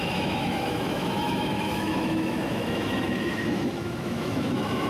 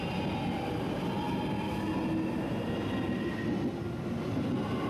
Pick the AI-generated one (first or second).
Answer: first